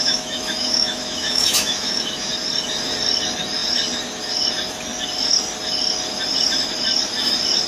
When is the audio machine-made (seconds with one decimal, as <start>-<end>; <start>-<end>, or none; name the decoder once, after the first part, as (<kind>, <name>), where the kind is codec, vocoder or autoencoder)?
0.0-2.3 (autoencoder, DAC-VAE)